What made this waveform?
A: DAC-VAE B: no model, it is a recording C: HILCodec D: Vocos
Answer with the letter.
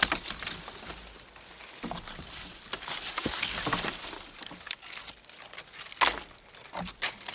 B